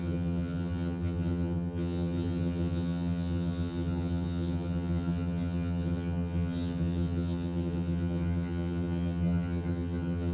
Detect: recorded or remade remade